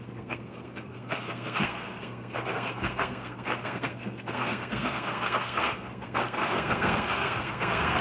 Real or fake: fake